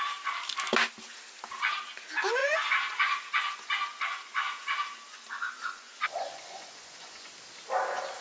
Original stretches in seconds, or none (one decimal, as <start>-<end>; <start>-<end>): 0.0-2.4; 7.3-8.2